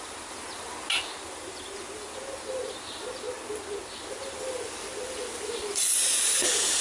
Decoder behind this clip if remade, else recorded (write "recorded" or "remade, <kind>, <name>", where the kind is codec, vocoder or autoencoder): recorded